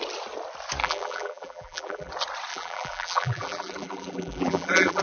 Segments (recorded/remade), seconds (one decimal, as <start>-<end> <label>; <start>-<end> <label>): 0.0-0.8 recorded; 0.8-2.1 remade; 2.1-2.5 recorded; 2.5-5.0 remade